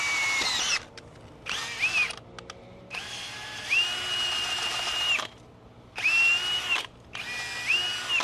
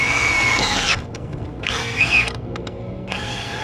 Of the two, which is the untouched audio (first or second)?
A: first